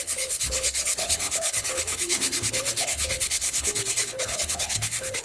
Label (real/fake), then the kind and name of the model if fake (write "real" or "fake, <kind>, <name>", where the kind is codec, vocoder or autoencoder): fake, codec, HILCodec